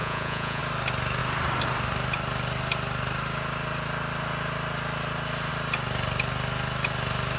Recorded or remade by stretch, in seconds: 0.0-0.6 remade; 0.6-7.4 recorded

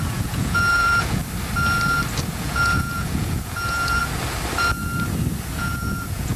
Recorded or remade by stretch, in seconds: 0.0-1.2 remade; 1.2-2.2 recorded; 2.2-4.0 remade; 4.0-5.6 recorded; 5.6-6.4 remade

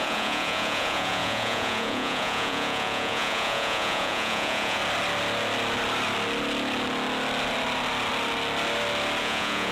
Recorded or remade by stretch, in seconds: 0.0-4.8 remade; 4.8-9.2 recorded; 9.2-9.7 remade